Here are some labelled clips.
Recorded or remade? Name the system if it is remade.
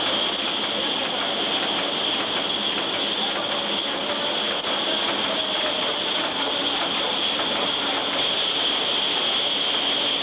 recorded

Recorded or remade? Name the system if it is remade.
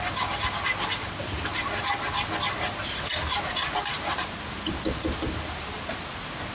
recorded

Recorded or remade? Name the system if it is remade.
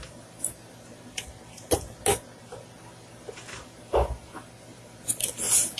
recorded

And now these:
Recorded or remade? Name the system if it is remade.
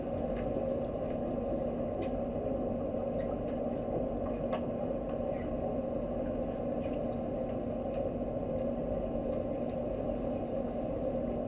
recorded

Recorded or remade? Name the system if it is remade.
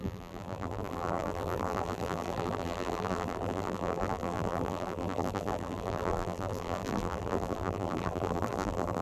remade, vocoder, BigVGAN v2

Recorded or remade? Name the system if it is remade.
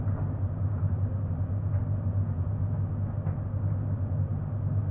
recorded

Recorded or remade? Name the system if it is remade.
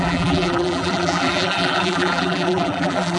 remade, vocoder, BigVGAN v2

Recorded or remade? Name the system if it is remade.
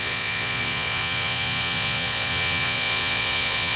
remade, vocoder, Vocos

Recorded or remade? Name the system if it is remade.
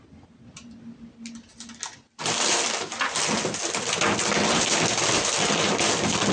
recorded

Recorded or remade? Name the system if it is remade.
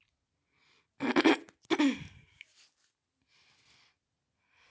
recorded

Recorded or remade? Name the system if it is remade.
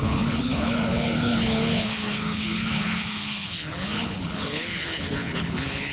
remade, codec, HILCodec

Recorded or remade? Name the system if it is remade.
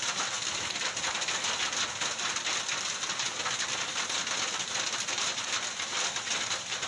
recorded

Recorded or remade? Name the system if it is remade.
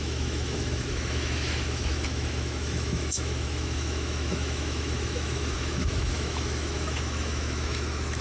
remade, autoencoder, DAC-VAE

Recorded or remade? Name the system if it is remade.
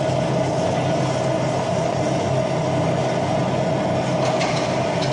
recorded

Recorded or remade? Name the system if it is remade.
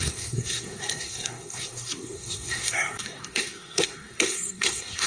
remade, codec, SNAC